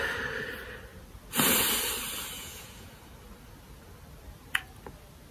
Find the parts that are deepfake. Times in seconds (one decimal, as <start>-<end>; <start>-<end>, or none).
2.4-3.0